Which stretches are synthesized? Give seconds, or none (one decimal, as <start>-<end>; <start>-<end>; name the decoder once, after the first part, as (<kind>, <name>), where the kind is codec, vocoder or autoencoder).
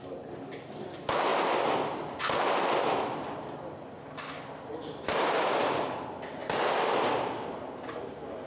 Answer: none